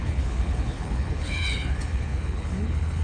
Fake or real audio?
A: fake